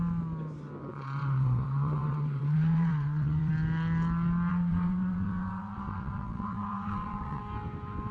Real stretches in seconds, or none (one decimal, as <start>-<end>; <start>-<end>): 0.0-0.9; 3.5-4.5; 7.4-8.1